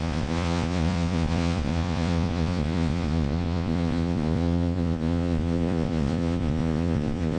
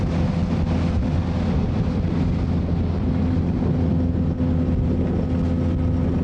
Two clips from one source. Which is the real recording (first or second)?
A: second